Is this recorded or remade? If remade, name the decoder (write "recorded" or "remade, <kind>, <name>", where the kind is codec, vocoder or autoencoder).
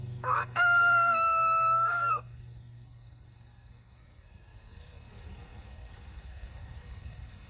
remade, codec, SNAC